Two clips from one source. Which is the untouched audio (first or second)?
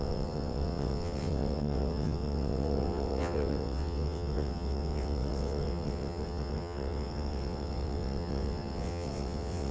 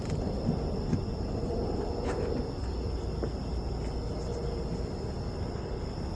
second